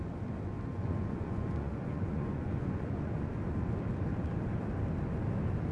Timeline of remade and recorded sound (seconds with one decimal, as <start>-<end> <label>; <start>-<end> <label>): 0.0-0.7 recorded; 0.7-3.3 remade; 3.3-5.7 recorded